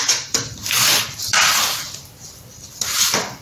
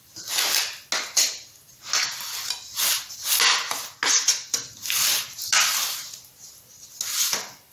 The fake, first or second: first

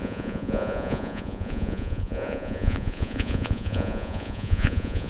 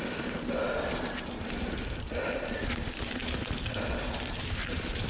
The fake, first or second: first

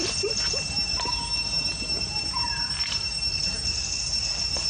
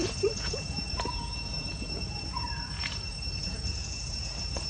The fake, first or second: second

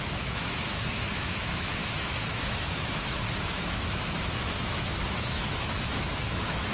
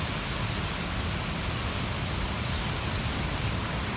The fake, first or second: first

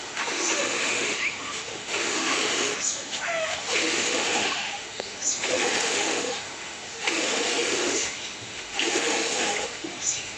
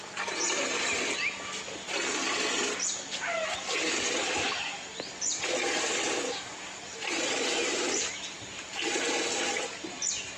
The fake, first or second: first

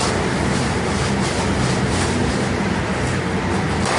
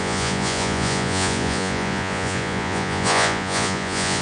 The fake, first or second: second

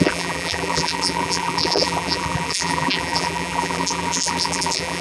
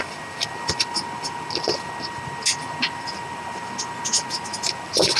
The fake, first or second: first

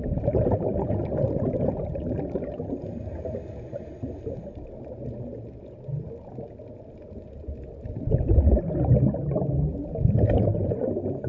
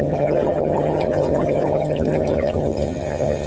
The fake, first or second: second